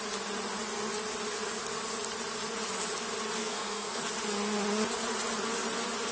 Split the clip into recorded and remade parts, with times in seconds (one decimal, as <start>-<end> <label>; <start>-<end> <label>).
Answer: 0.0-3.4 recorded; 3.4-4.0 remade; 4.0-6.1 recorded